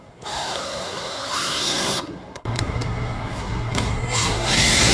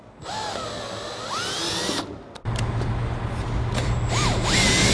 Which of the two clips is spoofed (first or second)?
first